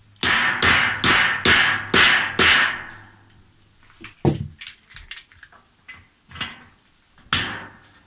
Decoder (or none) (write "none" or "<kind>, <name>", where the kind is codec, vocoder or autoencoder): none